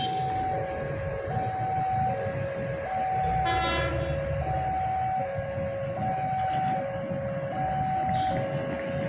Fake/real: real